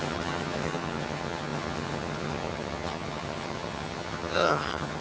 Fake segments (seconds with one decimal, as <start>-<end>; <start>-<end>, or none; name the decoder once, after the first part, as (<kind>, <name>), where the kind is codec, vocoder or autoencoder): 0.0-5.0 (vocoder, HiFi-GAN)